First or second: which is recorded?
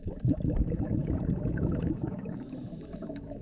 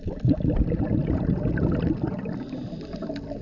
second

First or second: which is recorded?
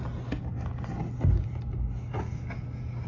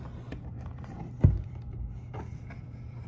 first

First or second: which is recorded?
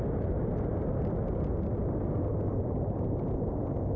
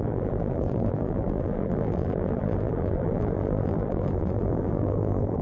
first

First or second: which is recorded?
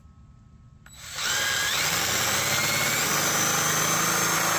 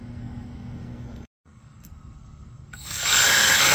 first